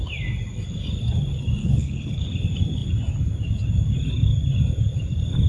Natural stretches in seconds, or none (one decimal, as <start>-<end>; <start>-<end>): 0.0-1.6; 2.2-5.5